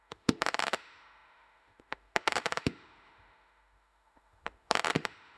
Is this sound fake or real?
fake